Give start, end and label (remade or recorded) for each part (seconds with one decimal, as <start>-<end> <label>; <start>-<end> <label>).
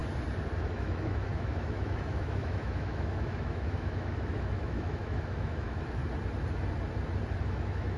0.0-0.6 recorded; 0.6-6.0 remade; 6.0-7.4 recorded; 7.4-8.0 remade